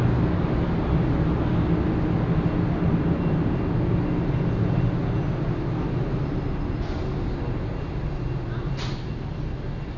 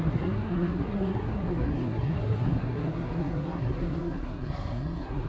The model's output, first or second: second